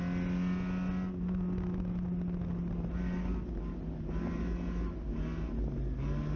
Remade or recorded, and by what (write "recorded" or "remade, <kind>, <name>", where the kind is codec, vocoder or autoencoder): recorded